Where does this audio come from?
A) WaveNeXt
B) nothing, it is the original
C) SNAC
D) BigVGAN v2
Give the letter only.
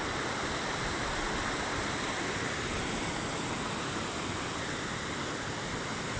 B